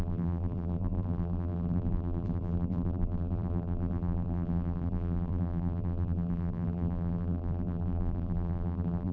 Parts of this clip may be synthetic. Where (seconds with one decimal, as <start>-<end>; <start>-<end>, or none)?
0.0-9.1

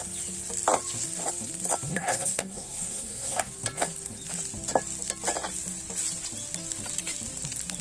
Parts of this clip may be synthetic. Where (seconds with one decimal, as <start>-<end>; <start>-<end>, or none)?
1.9-3.5

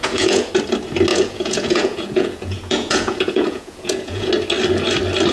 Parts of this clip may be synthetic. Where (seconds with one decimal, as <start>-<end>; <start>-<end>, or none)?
0.0-0.5; 1.1-4.3

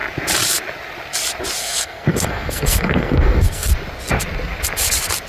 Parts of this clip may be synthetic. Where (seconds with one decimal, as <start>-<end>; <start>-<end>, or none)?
1.6-3.7

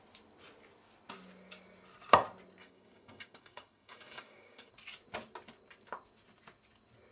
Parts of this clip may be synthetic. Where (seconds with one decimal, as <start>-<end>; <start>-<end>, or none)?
2.6-4.7

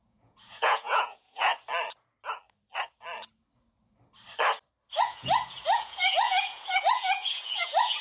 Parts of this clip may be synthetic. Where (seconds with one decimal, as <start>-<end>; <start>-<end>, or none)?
0.0-1.5; 5.0-8.0